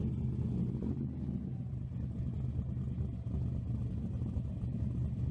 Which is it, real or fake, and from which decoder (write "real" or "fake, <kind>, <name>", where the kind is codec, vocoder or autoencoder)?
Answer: real